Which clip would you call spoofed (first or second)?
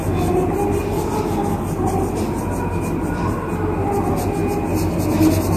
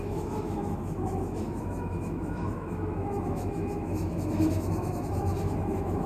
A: second